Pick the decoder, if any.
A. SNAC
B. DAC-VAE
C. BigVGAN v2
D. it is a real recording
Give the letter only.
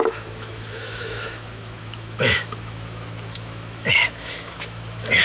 B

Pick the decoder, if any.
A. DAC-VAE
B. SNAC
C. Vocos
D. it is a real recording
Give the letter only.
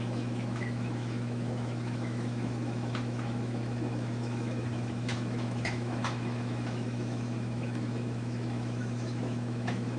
A